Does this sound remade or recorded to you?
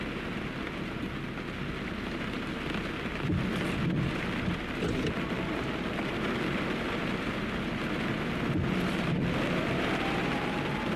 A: recorded